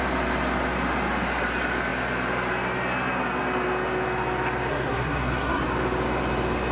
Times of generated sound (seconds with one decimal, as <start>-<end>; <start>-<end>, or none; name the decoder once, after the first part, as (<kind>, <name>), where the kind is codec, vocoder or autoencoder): 4.7-5.6 (codec, SNAC)